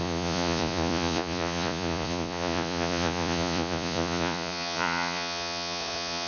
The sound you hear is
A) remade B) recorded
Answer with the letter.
A